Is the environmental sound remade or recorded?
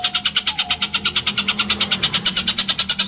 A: recorded